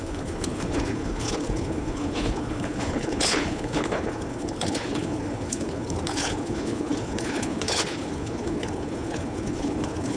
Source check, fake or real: fake